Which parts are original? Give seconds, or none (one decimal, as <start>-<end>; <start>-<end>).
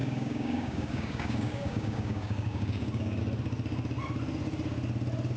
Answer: 3.2-5.4